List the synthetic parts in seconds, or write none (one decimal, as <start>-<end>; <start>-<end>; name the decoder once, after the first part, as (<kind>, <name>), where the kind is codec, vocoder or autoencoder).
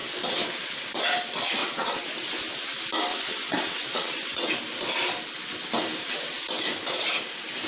1.6-2.1 (vocoder, WaveNeXt); 3.1-4.5